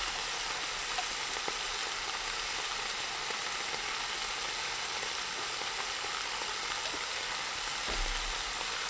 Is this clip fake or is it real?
real